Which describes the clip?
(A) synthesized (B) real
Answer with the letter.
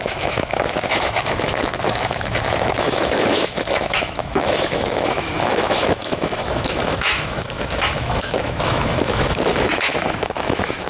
A